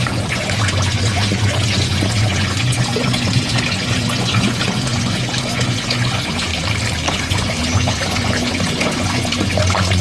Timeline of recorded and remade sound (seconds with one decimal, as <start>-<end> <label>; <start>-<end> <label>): 0.0-6.5 remade; 6.5-7.1 recorded; 7.1-10.0 remade